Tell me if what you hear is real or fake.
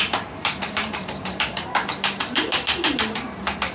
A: fake